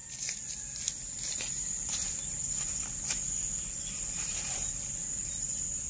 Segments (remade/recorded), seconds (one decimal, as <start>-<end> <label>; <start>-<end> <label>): 0.0-5.9 recorded